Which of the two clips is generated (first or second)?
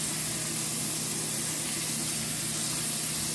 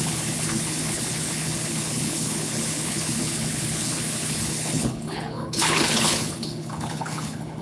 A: second